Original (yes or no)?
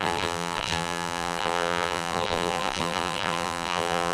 no